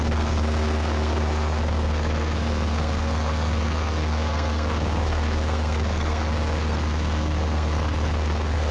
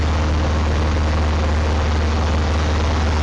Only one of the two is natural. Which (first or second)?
second